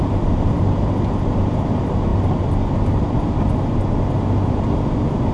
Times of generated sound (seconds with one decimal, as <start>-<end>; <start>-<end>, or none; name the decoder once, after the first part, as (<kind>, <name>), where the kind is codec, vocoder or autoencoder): none